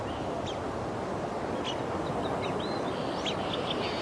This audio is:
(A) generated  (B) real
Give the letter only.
B